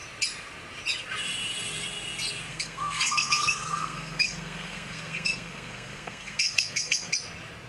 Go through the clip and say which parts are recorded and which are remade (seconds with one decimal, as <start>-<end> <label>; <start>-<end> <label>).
0.0-2.5 recorded; 2.5-7.1 remade; 7.1-7.7 recorded